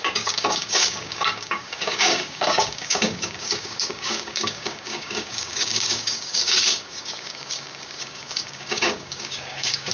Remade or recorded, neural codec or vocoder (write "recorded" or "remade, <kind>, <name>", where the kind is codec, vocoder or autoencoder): remade, codec, DAC